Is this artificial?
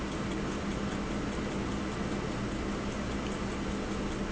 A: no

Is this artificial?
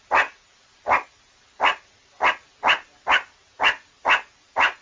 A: no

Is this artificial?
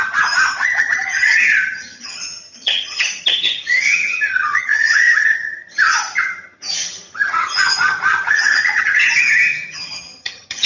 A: yes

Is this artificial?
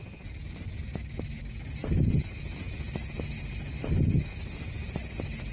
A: no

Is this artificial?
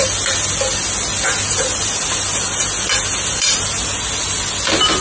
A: no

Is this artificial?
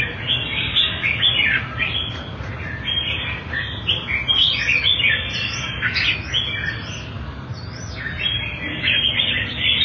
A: no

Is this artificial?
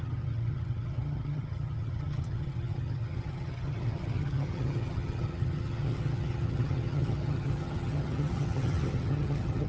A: yes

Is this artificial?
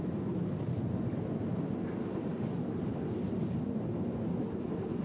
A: no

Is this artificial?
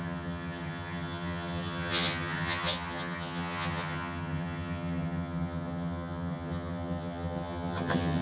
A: yes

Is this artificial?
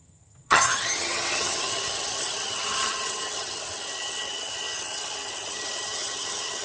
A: yes